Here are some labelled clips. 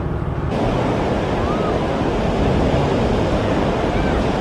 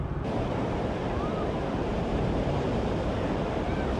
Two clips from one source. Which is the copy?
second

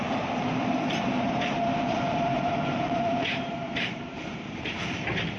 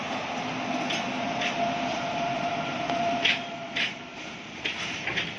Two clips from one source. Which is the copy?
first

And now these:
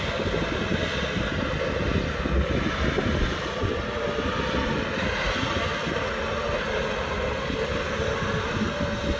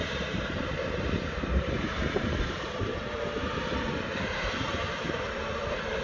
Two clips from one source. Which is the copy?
second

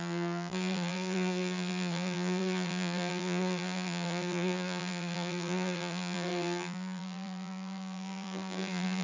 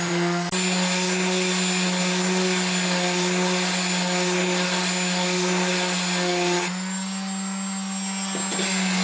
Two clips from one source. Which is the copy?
first